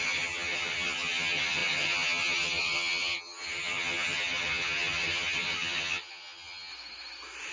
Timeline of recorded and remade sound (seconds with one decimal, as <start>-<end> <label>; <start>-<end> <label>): 0.0-6.7 remade; 6.7-7.5 recorded